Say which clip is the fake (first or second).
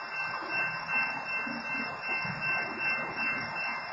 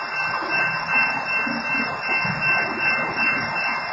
second